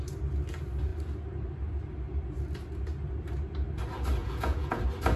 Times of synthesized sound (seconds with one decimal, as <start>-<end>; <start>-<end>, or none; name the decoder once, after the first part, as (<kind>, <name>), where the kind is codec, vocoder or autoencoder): 4.2-4.8 (vocoder, Vocos)

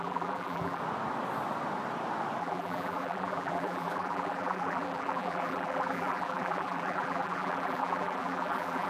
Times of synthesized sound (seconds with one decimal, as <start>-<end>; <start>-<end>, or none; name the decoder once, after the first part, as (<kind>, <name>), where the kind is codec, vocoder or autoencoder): 0.0-0.8 (vocoder, BigVGAN v2); 2.4-8.9

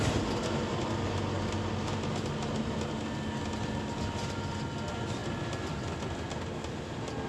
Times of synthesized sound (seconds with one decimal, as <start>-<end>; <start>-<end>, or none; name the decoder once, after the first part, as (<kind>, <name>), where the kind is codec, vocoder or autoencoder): none